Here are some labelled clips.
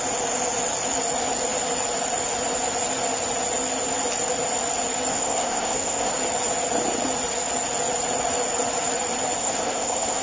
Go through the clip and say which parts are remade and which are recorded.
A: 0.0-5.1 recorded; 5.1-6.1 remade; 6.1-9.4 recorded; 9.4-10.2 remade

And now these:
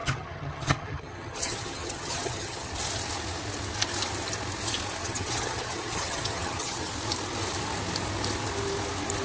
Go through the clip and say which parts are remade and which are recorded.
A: 0.0-2.7 remade; 2.7-5.0 recorded; 5.0-6.9 remade; 6.9-9.2 recorded

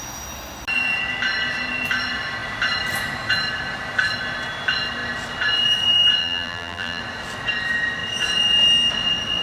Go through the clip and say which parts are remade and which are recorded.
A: 0.0-6.2 recorded; 6.2-7.0 remade; 7.0-9.4 recorded

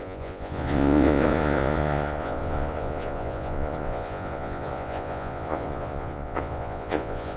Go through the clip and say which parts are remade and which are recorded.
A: 0.0-7.4 remade